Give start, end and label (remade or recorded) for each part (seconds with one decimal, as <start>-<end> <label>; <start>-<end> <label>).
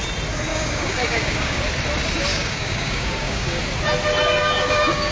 0.0-0.5 recorded; 0.5-1.6 remade; 1.6-2.3 recorded; 2.3-3.6 remade; 3.6-4.4 recorded; 4.4-5.1 remade